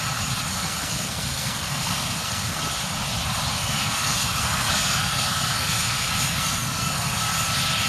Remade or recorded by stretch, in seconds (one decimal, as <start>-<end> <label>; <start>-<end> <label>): 0.0-0.5 recorded; 0.5-2.6 remade; 2.6-3.5 recorded; 3.5-7.3 remade; 7.3-7.9 recorded